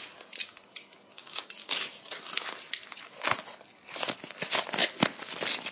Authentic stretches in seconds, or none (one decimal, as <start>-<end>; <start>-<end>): 0.0-1.2; 1.8-5.7